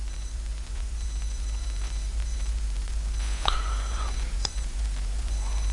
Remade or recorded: remade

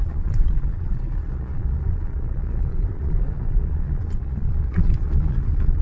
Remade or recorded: remade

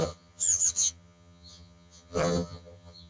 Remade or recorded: remade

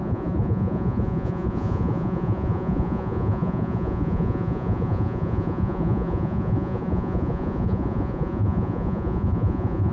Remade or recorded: remade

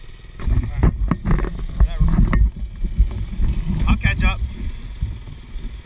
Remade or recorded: recorded